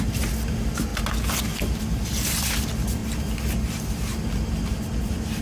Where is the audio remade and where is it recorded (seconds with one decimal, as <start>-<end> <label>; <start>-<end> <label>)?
0.0-5.4 recorded